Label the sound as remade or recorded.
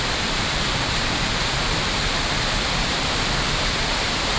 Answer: remade